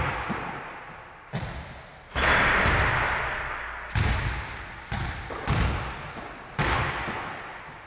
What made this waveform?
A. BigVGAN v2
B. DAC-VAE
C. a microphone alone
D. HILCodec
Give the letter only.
C